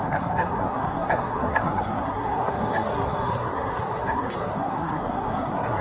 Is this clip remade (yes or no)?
yes